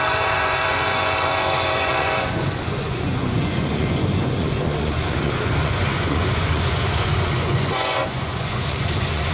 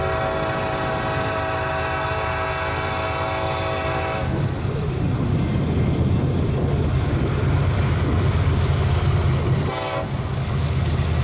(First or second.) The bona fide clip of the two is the second